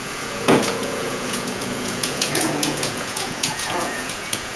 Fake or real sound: fake